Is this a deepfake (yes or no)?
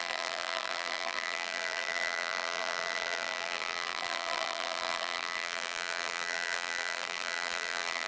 yes